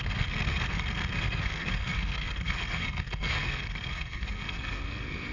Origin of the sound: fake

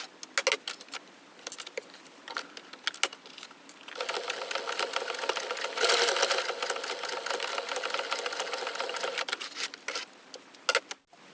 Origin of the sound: real